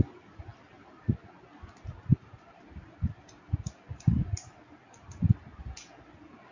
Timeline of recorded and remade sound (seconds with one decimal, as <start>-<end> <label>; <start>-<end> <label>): 0.0-0.5 recorded; 0.5-1.1 remade; 1.1-2.1 recorded; 2.1-5.2 remade; 5.2-6.5 recorded